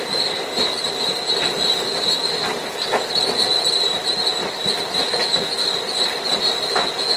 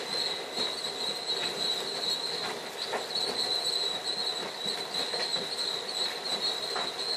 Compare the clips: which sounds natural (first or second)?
second